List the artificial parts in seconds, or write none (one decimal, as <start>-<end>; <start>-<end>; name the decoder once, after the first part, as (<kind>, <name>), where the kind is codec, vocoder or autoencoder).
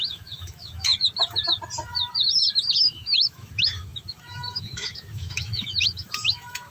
0.0-0.9 (autoencoder, DAC-VAE); 2.8-6.7